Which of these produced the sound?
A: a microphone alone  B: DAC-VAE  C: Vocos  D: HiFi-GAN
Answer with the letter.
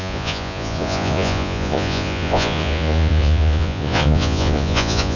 C